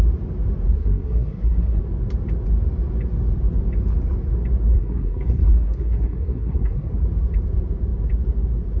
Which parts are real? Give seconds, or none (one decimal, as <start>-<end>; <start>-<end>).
0.0-0.8; 1.8-4.7; 6.9-8.8